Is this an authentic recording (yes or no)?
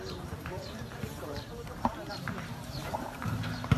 no